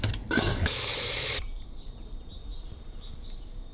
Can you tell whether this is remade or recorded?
remade